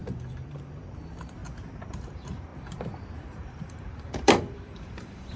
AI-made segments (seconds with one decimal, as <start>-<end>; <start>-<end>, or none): 0.0-1.4; 1.9-5.4